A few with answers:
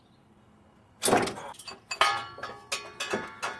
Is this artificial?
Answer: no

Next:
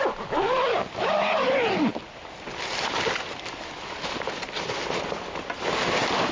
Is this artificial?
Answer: no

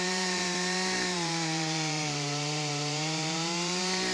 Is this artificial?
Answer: yes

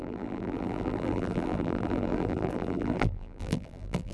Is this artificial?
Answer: yes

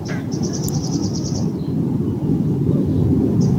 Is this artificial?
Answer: no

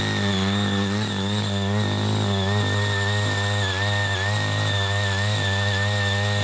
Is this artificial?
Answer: no